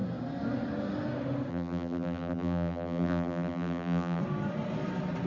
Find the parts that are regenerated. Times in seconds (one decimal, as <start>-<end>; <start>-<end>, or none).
1.5-4.2